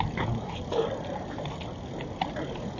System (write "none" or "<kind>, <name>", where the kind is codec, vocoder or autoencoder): none